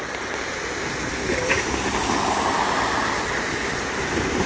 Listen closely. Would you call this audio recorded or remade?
recorded